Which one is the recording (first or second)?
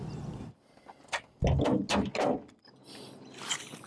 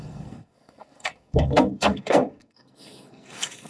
first